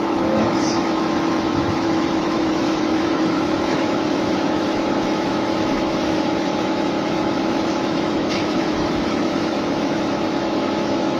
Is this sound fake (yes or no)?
yes